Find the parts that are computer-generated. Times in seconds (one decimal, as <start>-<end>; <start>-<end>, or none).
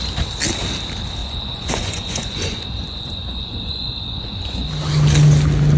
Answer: 1.2-4.7